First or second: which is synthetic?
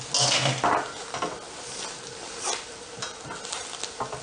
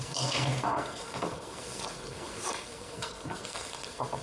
second